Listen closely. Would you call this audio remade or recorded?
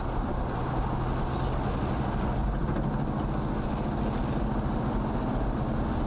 recorded